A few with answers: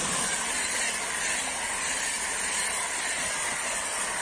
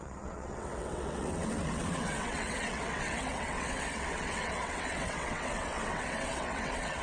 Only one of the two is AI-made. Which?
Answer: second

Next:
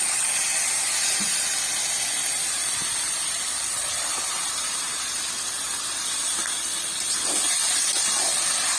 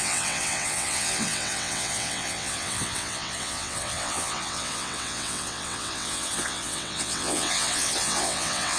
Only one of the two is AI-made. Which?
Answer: second